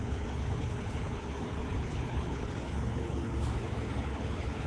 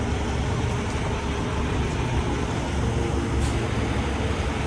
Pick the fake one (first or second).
first